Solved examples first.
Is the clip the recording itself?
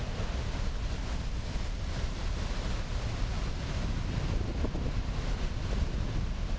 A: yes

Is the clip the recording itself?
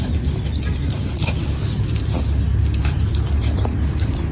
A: yes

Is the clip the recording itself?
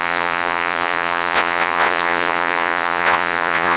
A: no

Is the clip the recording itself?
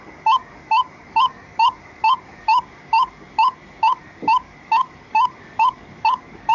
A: no